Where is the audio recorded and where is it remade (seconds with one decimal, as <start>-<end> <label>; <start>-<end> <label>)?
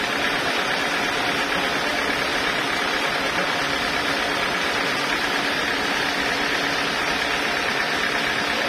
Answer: 0.0-2.3 recorded; 2.3-3.1 remade; 3.1-8.7 recorded